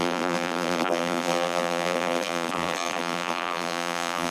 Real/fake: fake